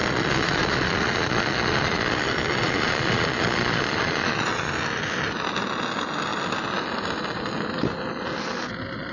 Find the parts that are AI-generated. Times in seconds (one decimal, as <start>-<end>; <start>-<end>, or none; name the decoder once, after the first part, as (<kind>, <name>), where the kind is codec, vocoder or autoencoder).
0.0-4.7 (vocoder, Vocos)